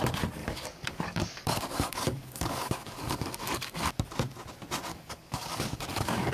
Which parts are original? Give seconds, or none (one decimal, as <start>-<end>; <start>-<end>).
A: 0.0-0.4; 3.9-4.9